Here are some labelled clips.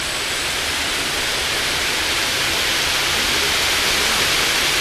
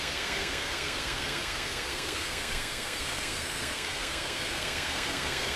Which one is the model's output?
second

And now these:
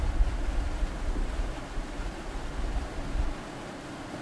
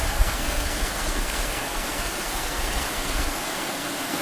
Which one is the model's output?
second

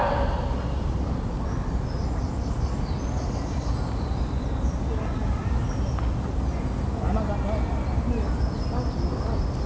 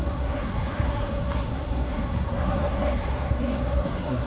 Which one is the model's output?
second